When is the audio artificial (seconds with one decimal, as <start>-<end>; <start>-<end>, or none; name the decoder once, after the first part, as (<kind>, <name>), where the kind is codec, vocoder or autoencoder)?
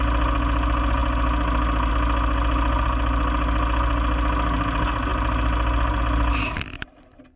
none